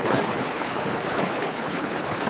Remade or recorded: remade